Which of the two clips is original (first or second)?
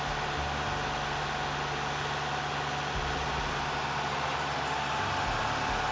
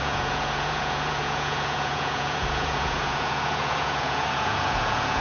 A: first